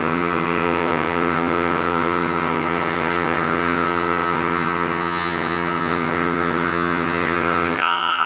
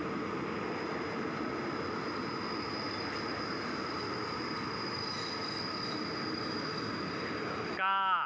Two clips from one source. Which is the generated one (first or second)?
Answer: first